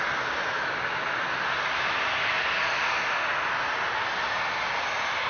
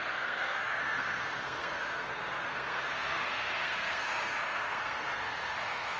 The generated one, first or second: second